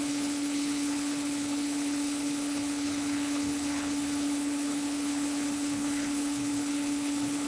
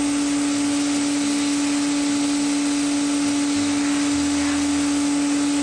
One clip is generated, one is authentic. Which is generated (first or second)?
first